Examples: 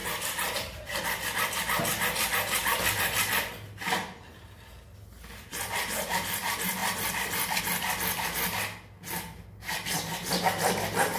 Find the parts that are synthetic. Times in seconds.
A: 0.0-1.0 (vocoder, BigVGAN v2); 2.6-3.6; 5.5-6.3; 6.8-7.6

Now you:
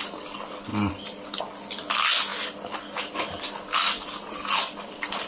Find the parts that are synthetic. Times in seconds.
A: none

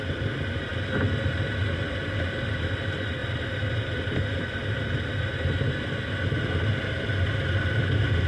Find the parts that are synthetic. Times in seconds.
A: 3.2-5.1 (vocoder, BigVGAN v2)

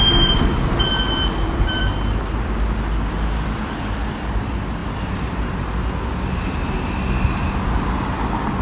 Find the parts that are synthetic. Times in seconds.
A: 0.0-4.8 (vocoder, BigVGAN v2)

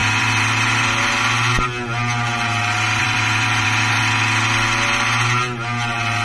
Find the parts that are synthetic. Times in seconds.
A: 0.0-1.1 (vocoder, BigVGAN v2); 3.0-4.0

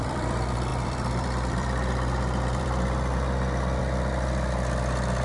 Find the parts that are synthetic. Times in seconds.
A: 0.0-5.2 (vocoder, BigVGAN v2)

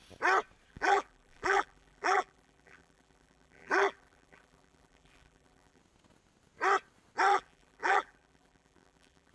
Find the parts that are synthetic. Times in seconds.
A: 0.7-5.8 (vocoder, BigVGAN v2); 7.3-9.3

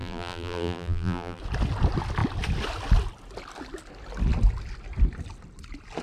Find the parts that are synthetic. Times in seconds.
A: 0.0-1.4 (vocoder, BigVGAN v2)